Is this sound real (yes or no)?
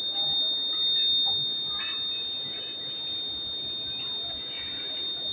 yes